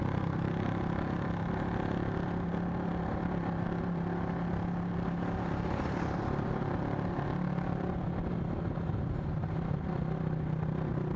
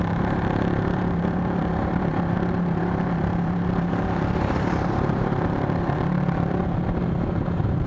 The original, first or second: first